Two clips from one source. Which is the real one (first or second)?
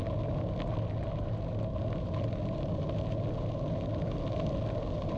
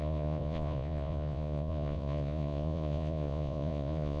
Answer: first